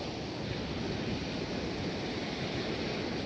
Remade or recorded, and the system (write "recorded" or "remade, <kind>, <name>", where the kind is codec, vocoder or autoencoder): recorded